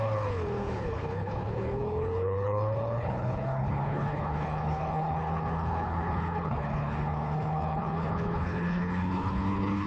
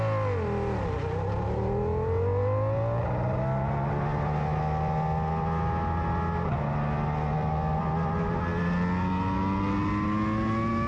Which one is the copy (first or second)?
first